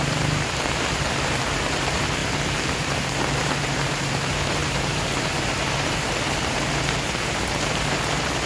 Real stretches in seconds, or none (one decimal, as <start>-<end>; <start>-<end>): 2.2-2.7